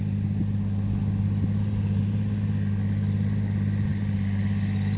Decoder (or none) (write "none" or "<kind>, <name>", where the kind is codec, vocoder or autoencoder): none